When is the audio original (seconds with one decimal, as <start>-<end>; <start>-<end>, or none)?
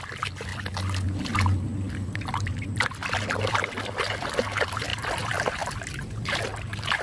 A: 0.0-7.0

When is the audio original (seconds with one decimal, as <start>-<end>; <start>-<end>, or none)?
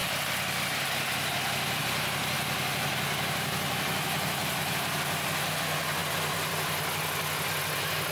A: 0.0-8.1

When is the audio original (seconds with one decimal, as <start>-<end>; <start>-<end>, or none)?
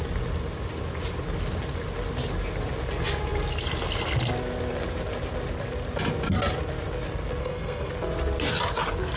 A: 0.0-7.4; 7.9-9.2